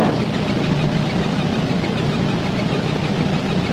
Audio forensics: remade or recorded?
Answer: recorded